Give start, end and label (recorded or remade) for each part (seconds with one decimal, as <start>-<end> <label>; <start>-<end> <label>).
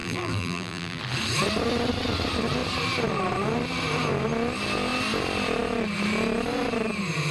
0.0-1.0 remade; 1.0-7.3 recorded